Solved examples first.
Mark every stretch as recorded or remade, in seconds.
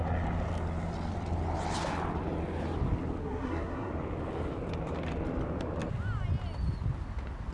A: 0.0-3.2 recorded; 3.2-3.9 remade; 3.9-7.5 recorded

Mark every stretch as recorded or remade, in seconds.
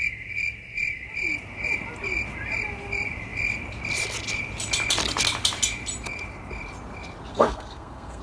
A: 0.0-7.3 recorded; 7.3-8.2 remade